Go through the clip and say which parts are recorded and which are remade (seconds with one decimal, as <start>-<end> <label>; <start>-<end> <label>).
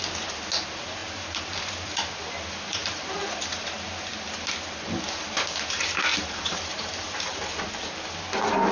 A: 0.0-1.0 recorded; 1.0-1.9 remade; 1.9-2.8 recorded; 2.8-3.4 remade; 3.4-6.1 recorded; 6.1-7.4 remade; 7.4-8.7 recorded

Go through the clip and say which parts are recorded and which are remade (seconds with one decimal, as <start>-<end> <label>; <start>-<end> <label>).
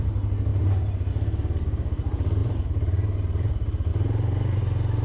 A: 0.0-2.4 recorded; 2.4-3.5 remade; 3.5-3.9 recorded; 3.9-4.6 remade; 4.6-5.0 recorded